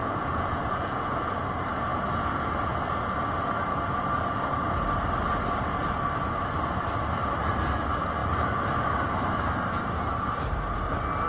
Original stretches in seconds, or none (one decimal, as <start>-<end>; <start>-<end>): 1.2-11.3